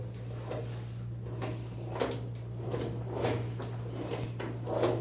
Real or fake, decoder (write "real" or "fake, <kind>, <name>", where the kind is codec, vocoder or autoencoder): real